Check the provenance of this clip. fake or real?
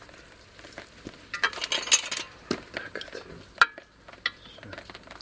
real